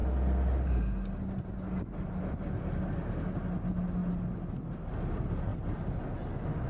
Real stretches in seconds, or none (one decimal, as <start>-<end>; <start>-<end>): 0.0-6.7